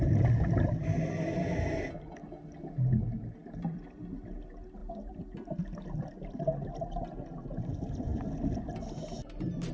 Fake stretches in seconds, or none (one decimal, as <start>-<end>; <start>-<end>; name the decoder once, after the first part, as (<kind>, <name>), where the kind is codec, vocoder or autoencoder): 3.4-4.0 (vocoder, BigVGAN v2); 4.8-6.4